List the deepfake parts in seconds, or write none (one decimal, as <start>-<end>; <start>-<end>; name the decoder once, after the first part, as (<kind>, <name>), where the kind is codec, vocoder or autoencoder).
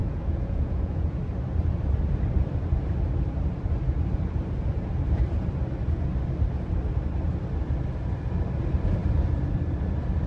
0.0-1.2 (vocoder, Vocos)